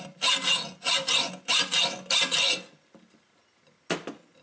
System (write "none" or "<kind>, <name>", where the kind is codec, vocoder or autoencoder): none